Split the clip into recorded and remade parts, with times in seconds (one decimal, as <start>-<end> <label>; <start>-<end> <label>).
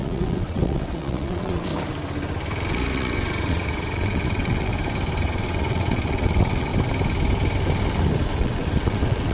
0.0-1.7 remade; 1.7-2.7 recorded; 2.7-4.7 remade; 4.7-5.2 recorded; 5.2-6.7 remade; 6.7-8.3 recorded; 8.3-9.3 remade